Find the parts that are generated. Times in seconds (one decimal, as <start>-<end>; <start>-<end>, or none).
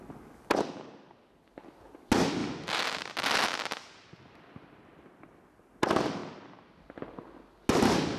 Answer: none